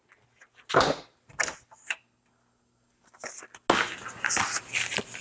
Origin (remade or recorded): recorded